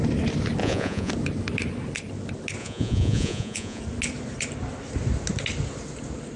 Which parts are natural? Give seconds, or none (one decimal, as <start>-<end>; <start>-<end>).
0.0-0.6; 1.1-2.6; 3.8-6.4